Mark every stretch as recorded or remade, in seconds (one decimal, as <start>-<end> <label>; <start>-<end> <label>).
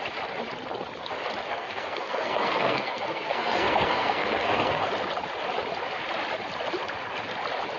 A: 0.0-1.5 recorded; 1.5-4.9 remade; 4.9-7.8 recorded